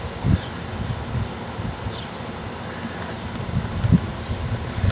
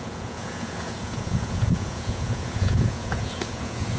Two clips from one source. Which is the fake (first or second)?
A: second